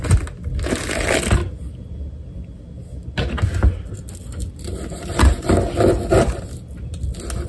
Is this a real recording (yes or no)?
yes